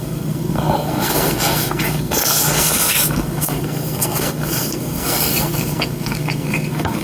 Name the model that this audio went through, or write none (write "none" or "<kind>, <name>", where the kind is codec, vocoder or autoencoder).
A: codec, SNAC